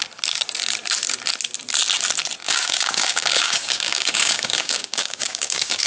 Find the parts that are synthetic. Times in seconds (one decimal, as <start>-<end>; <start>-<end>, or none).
2.4-5.9